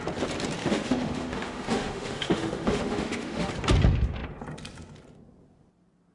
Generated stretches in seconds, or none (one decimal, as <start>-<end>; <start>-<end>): 0.6-3.5